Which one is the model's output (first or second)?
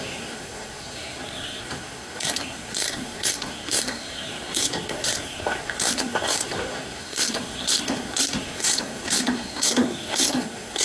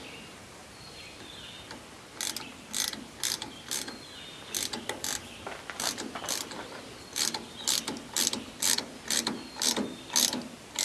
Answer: first